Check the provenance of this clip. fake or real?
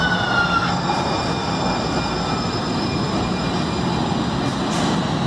real